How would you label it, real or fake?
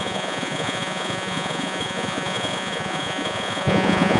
fake